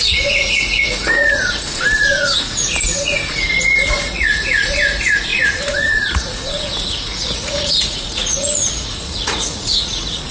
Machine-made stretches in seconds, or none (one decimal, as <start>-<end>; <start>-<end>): 0.0-10.3